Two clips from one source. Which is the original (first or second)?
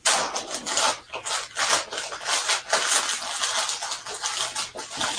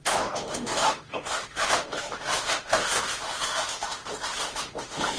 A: first